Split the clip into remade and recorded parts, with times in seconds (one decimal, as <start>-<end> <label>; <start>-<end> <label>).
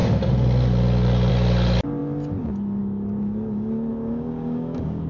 0.0-3.9 recorded; 3.9-5.1 remade